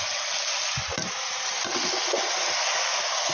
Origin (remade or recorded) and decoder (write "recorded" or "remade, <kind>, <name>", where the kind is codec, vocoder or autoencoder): recorded